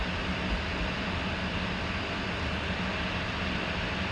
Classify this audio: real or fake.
real